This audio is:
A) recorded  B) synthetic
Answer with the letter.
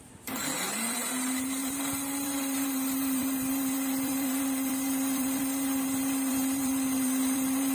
B